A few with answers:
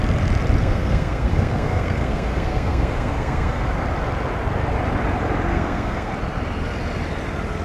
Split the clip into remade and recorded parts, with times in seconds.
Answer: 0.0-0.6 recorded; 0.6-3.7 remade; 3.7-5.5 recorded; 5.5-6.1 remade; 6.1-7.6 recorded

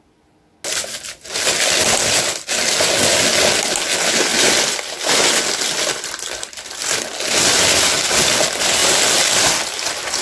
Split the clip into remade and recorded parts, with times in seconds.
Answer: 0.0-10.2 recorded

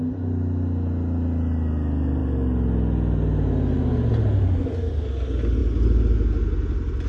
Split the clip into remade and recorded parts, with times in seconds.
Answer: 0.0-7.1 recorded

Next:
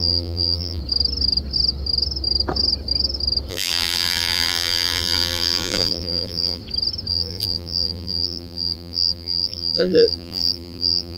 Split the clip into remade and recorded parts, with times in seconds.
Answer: 0.0-0.8 remade; 0.8-3.5 recorded; 3.5-6.6 remade; 6.6-7.1 recorded; 7.1-11.2 remade